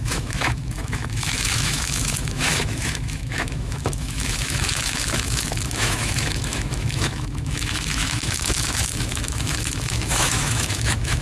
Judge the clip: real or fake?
fake